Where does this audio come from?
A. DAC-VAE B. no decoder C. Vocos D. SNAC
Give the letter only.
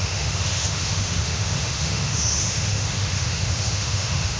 A